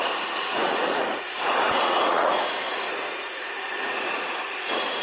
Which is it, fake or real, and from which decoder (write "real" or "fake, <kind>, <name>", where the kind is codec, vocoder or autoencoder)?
fake, vocoder, Vocos